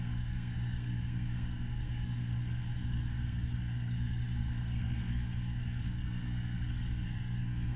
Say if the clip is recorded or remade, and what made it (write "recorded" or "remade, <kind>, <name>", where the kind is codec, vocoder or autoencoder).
remade, codec, SNAC